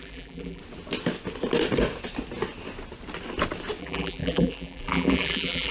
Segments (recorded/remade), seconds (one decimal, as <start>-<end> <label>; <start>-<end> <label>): 0.0-0.6 remade; 0.6-3.8 recorded; 3.8-5.7 remade